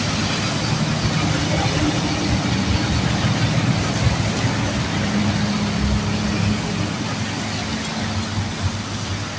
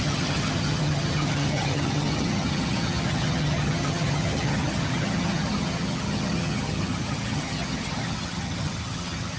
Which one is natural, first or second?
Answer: first